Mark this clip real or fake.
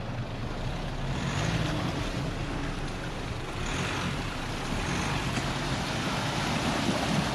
real